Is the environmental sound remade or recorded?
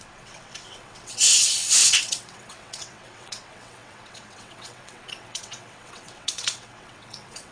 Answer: remade